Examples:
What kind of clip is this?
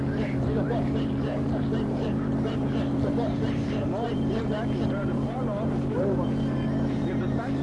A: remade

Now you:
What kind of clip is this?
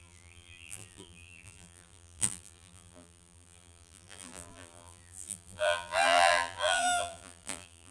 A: remade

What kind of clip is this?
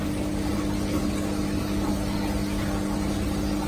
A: recorded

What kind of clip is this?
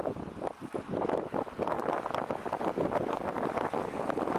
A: recorded